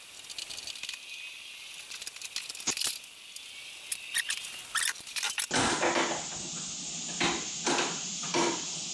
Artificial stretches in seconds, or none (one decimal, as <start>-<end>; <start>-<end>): none